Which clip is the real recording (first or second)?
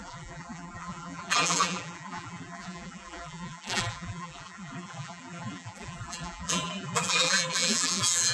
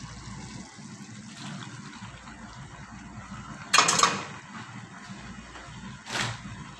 second